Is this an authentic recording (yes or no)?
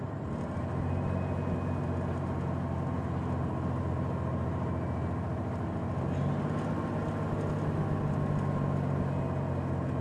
yes